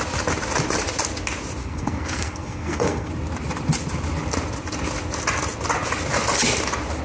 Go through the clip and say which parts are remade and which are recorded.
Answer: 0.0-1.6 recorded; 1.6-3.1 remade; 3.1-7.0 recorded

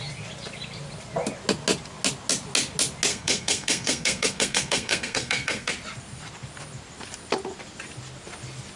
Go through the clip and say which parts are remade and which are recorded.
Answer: 0.0-3.1 recorded; 3.1-5.7 remade; 5.7-8.8 recorded

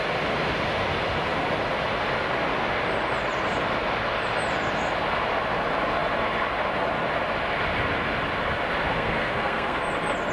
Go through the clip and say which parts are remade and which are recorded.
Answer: 0.0-8.9 recorded; 8.9-9.8 remade; 9.8-10.3 recorded